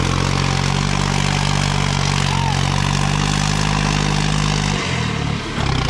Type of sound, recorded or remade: recorded